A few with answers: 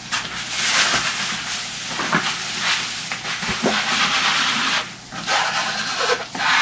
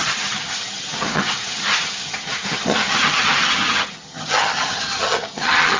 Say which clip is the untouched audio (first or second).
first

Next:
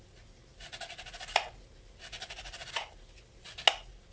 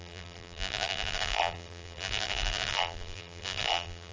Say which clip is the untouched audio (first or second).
first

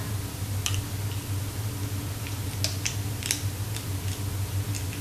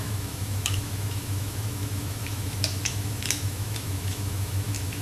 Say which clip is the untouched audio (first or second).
first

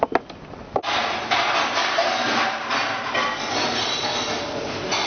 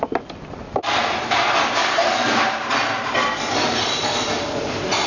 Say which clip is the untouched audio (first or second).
first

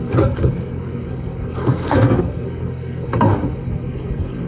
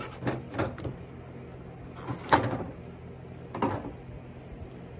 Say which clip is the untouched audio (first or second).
second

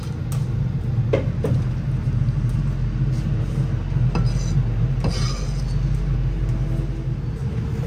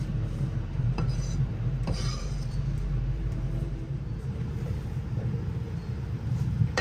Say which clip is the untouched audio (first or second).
first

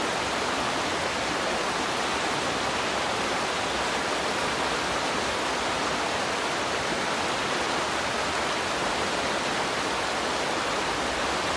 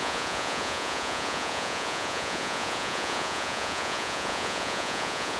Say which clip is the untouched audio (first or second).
first